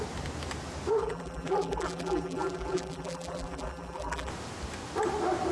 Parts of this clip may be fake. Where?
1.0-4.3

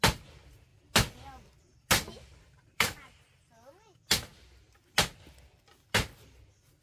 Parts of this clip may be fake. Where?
2.1-3.0

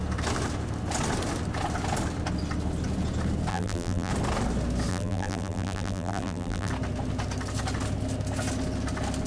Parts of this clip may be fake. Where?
3.5-4.1; 4.9-6.7